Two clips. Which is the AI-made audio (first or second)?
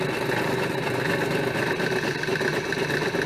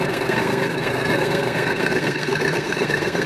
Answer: second